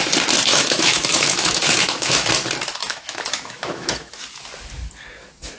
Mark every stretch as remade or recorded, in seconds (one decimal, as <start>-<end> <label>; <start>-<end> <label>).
0.0-0.5 recorded; 0.5-2.3 remade; 2.3-2.8 recorded; 2.8-4.1 remade; 4.1-5.6 recorded